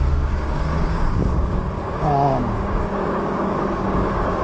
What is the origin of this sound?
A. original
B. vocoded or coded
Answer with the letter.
B